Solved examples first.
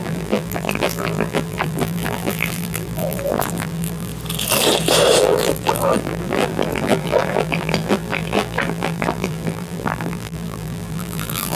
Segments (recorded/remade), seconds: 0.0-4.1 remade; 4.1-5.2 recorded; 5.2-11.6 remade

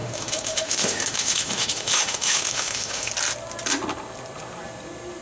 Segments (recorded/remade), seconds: 0.0-3.1 remade; 3.1-5.2 recorded

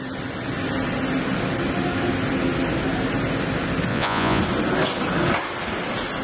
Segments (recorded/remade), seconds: 0.0-3.9 recorded; 3.9-4.4 remade; 4.4-6.2 recorded

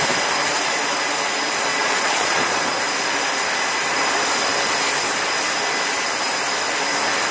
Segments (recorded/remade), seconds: 0.0-1.7 recorded; 1.7-2.8 remade; 2.8-7.3 recorded